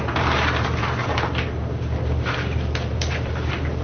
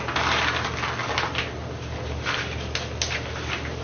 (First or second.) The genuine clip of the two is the second